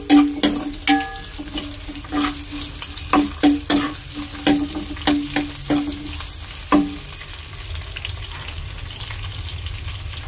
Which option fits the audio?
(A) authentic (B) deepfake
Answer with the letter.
A